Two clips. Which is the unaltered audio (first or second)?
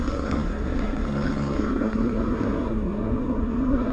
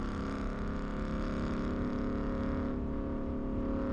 second